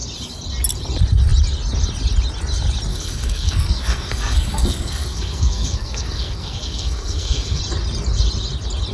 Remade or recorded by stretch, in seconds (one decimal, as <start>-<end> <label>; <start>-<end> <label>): 0.0-2.9 recorded; 2.9-7.6 remade; 7.6-8.9 recorded